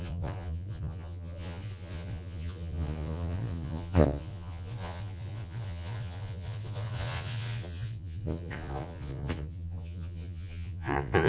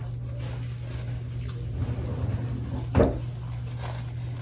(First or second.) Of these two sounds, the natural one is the second